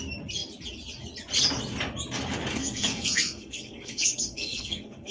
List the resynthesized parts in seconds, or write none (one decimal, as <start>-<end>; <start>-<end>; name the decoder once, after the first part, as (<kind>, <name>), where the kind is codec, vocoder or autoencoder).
2.5-5.1 (codec, SNAC)